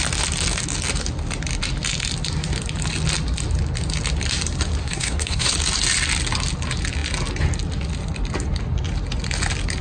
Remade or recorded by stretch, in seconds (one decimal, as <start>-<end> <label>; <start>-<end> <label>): 0.0-4.8 recorded; 4.8-5.5 remade; 5.5-9.8 recorded

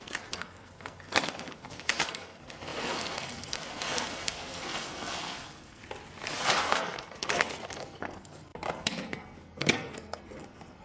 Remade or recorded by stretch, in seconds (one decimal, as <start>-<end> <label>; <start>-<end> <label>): 0.0-5.8 remade; 5.8-6.4 recorded; 6.4-10.8 remade

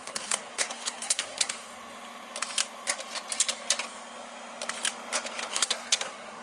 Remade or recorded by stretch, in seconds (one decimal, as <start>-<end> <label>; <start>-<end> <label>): 0.0-1.7 remade; 1.7-5.5 recorded; 5.5-6.4 remade

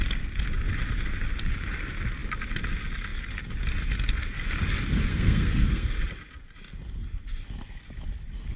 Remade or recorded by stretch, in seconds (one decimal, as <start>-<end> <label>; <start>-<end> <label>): 0.0-5.1 recorded; 5.1-5.9 remade; 5.9-8.6 recorded

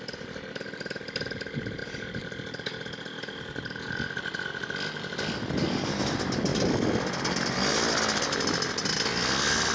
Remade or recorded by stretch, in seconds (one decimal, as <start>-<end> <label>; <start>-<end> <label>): 0.0-9.7 recorded

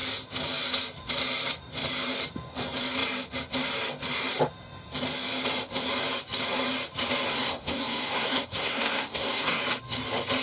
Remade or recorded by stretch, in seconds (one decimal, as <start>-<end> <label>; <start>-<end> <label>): 0.0-7.3 recorded; 7.3-9.6 remade; 9.6-10.4 recorded

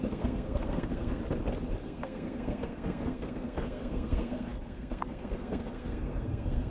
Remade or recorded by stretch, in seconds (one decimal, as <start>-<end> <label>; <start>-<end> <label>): 0.0-1.2 remade; 1.2-1.8 recorded; 1.8-6.7 remade

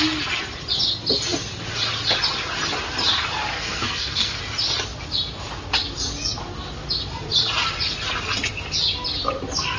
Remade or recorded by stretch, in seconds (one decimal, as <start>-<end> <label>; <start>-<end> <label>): 0.0-3.5 recorded; 3.5-4.4 remade; 4.4-9.8 recorded